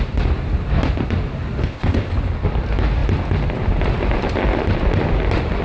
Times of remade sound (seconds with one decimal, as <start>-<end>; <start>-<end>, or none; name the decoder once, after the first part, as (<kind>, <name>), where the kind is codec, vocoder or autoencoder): 1.6-2.1 (codec, ZipCodec)